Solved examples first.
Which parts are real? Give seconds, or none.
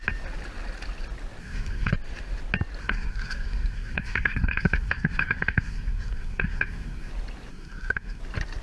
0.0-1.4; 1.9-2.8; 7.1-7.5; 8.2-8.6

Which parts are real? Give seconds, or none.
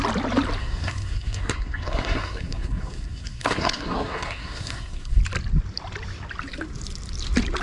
0.0-0.6; 5.2-7.6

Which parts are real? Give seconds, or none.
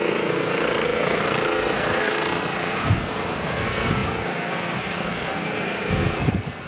none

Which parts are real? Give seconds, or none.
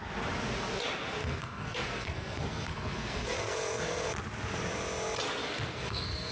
0.0-1.2; 4.1-5.4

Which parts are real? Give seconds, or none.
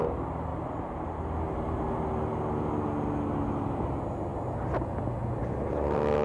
0.0-6.2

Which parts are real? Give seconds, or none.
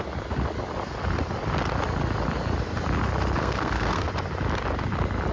0.0-3.4; 4.1-5.3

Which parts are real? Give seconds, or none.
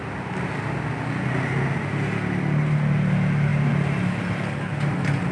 0.0-5.3